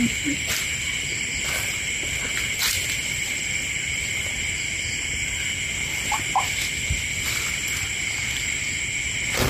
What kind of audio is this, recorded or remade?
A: recorded